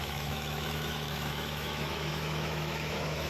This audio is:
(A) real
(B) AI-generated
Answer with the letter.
B